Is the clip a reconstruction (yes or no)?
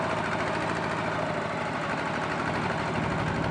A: no